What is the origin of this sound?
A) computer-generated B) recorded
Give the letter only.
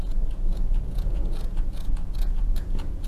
A